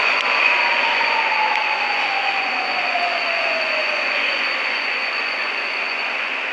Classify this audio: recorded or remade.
remade